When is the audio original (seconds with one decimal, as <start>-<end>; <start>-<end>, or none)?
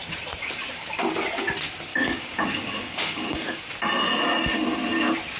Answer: 0.0-1.9; 3.6-5.4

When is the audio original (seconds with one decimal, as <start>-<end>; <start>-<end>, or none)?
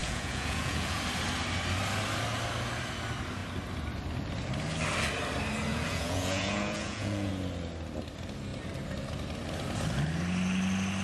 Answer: 1.0-5.7; 7.3-11.0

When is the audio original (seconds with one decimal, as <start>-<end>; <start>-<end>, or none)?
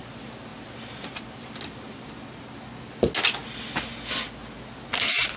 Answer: 0.0-5.4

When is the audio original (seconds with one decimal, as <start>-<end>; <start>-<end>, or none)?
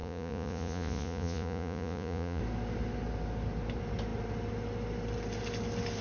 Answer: 2.4-6.0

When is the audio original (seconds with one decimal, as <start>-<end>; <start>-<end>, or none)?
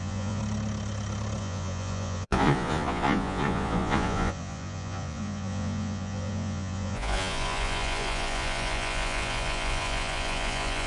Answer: 0.4-1.4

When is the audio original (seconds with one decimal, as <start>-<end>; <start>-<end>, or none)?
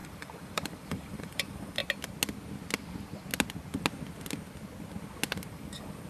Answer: 1.8-5.5